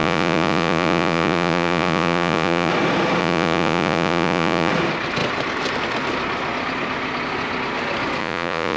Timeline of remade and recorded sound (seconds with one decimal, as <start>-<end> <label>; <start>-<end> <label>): 0.0-2.7 remade; 2.7-3.2 recorded; 3.2-4.7 remade; 4.7-8.2 recorded; 8.2-8.8 remade